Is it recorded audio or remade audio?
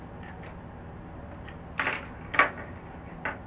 recorded